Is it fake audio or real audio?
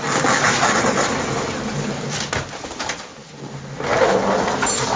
real